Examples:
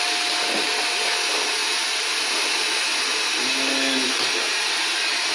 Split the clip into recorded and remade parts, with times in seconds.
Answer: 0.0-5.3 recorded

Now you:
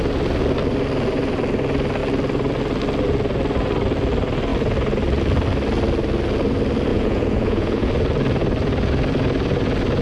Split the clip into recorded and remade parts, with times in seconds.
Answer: 0.0-6.9 recorded; 6.9-7.9 remade; 7.9-10.0 recorded

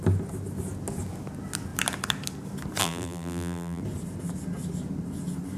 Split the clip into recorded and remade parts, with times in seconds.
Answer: 0.0-2.8 recorded; 2.8-3.8 remade; 3.8-5.6 recorded

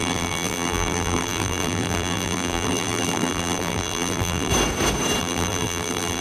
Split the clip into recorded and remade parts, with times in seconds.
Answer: 0.0-4.5 remade; 4.5-5.2 recorded; 5.2-6.2 remade

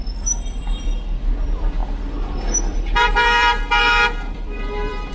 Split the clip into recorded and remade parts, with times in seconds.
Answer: 0.0-5.1 remade